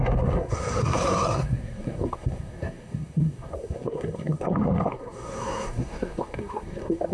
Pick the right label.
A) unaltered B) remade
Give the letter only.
B